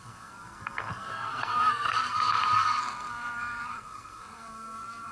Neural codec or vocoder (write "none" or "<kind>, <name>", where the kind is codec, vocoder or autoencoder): codec, SNAC